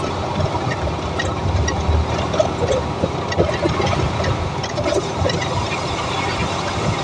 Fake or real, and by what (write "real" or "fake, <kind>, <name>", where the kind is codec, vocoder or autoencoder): real